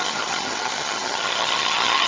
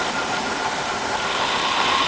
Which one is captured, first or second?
second